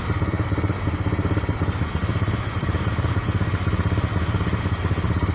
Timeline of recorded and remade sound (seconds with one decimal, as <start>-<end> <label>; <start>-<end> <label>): 0.0-2.0 recorded; 2.0-2.9 remade; 2.9-5.3 recorded